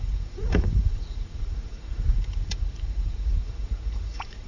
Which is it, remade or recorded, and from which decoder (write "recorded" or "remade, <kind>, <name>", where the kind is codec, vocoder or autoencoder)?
remade, vocoder, Vocos